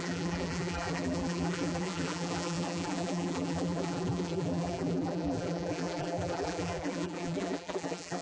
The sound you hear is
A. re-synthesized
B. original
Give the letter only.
A